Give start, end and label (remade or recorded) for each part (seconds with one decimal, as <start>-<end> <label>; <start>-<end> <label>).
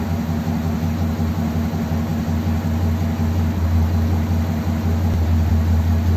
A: 0.0-6.2 recorded